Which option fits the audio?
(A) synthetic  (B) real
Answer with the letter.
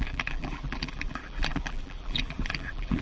A